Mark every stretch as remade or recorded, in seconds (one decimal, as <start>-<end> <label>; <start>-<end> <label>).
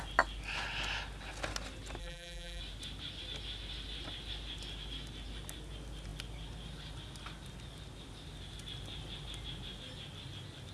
0.0-2.0 recorded; 2.0-2.6 remade; 2.6-10.7 recorded